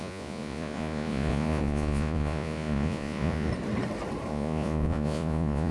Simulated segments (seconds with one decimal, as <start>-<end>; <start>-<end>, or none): 0.0-3.5; 4.3-5.7